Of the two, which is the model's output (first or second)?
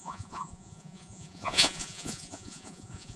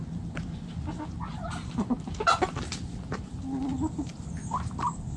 first